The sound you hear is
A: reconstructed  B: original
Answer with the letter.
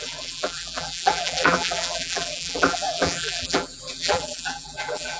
A